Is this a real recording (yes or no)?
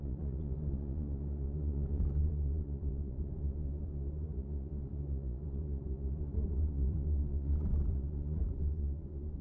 no